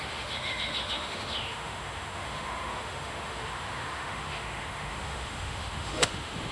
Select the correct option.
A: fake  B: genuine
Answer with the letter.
A